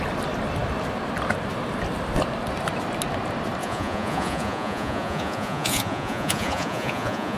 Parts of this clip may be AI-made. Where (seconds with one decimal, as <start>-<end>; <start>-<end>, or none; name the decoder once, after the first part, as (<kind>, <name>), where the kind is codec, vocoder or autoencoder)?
3.6-7.4 (vocoder, Vocos)